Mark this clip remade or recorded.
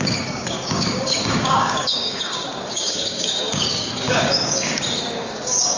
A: remade